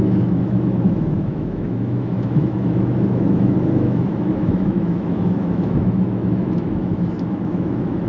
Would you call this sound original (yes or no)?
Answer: no